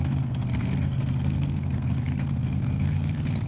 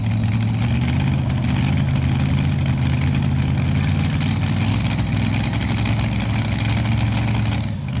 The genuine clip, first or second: second